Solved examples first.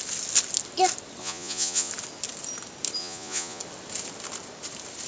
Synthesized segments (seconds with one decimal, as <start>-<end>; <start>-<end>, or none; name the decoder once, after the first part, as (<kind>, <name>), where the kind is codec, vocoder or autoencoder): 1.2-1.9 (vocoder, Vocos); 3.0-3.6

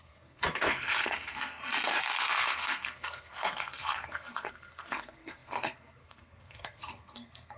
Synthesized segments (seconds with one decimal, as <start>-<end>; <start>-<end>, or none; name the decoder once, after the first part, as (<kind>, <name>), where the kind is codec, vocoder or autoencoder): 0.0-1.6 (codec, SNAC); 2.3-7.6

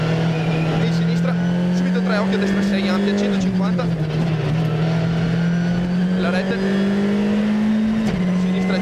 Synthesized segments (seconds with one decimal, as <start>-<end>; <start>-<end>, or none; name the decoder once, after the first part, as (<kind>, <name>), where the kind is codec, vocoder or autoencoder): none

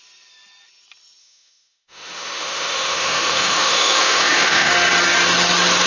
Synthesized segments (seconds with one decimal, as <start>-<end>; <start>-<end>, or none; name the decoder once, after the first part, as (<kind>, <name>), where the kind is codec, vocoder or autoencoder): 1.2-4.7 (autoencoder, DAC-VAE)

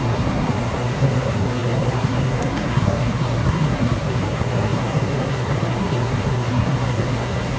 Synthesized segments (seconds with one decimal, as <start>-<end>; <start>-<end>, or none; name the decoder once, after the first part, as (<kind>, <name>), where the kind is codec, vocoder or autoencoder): 0.0-7.6 (codec, SNAC)